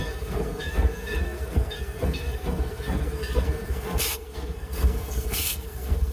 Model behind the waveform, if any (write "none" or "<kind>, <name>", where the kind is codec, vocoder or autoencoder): codec, SNAC